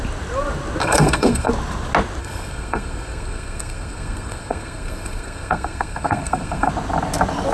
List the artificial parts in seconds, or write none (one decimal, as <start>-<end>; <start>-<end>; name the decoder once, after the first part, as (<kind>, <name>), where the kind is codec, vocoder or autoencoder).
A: 0.8-1.5 (codec, SNAC); 2.2-6.7